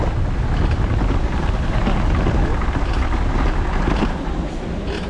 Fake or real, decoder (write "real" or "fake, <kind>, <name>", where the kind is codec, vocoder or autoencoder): real